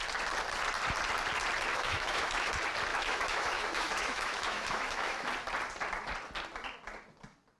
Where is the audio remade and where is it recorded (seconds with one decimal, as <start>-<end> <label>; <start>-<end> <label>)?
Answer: 0.0-1.7 recorded; 1.7-2.5 remade; 2.5-2.9 recorded; 2.9-5.3 remade; 5.3-7.6 recorded